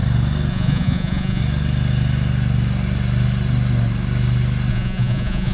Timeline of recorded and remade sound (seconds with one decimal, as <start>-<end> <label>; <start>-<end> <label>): 0.0-0.5 recorded; 0.5-1.4 remade; 1.4-4.7 recorded; 4.7-5.5 remade

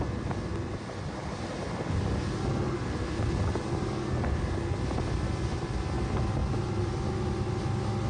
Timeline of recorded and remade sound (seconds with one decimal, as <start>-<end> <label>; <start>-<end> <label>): 0.0-8.1 recorded

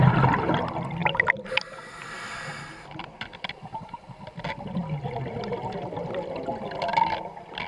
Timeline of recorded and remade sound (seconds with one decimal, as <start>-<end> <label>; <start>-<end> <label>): 0.0-7.7 recorded